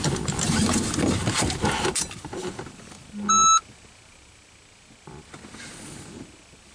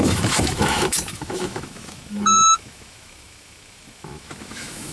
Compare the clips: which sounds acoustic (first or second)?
first